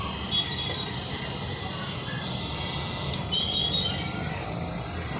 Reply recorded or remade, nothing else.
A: recorded